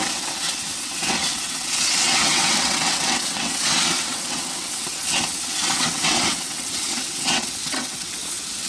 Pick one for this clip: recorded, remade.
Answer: remade